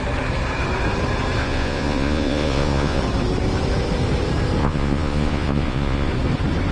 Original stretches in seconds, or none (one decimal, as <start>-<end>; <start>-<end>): 0.0-1.4; 3.0-4.6; 6.1-6.7